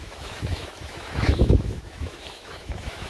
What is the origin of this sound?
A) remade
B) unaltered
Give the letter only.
A